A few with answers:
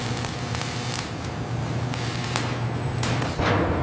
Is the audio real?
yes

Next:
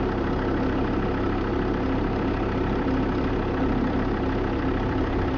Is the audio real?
yes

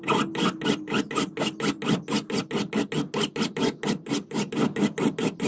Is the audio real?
yes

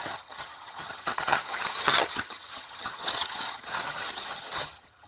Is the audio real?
no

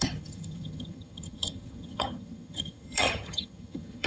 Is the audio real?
no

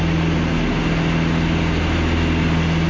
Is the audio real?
yes